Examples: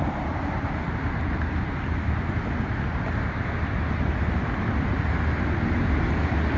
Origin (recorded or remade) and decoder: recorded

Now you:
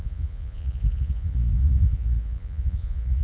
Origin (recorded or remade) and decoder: remade, vocoder, Vocos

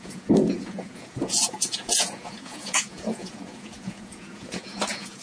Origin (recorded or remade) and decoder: remade, vocoder, Vocos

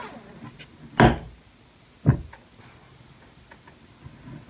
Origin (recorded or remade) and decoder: recorded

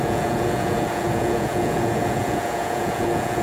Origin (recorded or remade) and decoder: remade, vocoder, Vocos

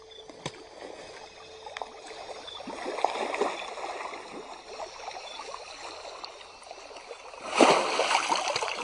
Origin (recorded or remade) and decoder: recorded